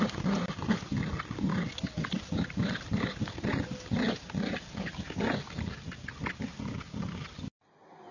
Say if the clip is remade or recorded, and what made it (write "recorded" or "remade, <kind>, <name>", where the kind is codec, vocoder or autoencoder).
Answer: recorded